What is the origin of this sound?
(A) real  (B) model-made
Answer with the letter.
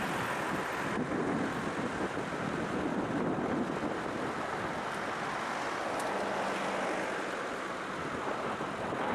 A